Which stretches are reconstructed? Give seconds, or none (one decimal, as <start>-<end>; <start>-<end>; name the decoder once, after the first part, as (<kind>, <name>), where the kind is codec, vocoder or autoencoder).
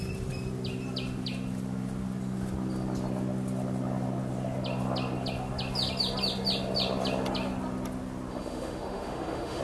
8.3-9.6 (autoencoder, DAC-VAE)